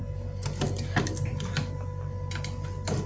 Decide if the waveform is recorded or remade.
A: recorded